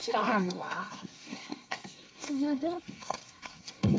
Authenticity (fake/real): fake